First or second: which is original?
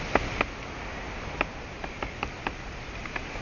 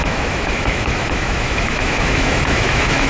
first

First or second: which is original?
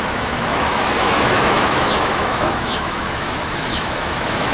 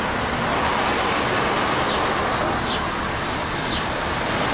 second